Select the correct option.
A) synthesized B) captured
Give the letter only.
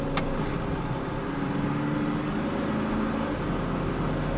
B